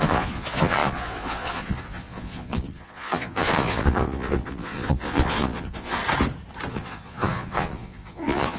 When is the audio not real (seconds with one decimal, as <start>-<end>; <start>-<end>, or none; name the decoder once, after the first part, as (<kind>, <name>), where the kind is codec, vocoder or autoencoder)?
0.0-6.0 (vocoder, Vocos); 6.7-8.6